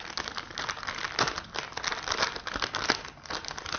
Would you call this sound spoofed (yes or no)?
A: no